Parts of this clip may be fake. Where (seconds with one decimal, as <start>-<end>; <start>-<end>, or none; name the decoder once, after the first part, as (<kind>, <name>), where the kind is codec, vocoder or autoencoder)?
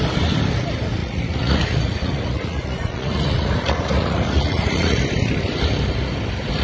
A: 1.0-5.0 (vocoder, Vocos)